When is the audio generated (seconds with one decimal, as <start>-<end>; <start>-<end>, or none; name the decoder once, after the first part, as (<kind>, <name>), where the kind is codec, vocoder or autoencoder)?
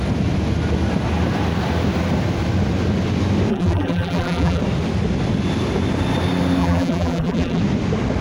3.5-4.6 (vocoder, BigVGAN v2); 6.6-7.6